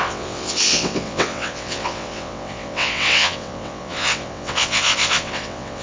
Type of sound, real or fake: fake